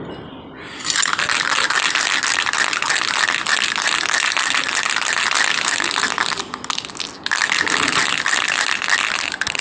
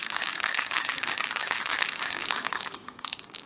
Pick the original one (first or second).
first